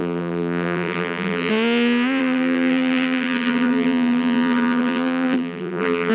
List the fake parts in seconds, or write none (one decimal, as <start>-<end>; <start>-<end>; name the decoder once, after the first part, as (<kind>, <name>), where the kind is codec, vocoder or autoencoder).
0.0-1.5 (vocoder, BigVGAN v2); 2.2-6.1